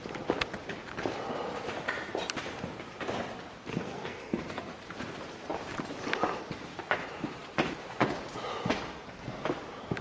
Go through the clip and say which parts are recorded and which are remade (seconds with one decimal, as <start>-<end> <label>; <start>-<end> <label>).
0.0-3.7 recorded; 3.7-4.6 remade; 4.6-10.0 recorded